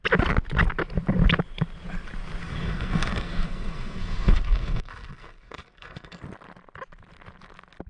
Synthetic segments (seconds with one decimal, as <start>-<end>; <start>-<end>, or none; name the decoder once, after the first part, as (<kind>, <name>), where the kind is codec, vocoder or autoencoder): 2.4-6.2 (codec, SNAC)